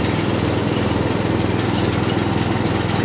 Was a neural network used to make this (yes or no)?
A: no